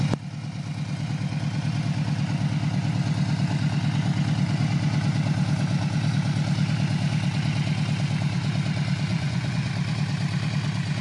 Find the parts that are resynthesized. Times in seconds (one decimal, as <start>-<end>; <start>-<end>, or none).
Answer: 9.1-9.7